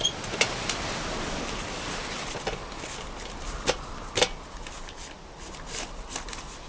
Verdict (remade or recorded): recorded